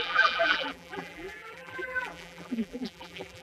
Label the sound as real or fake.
fake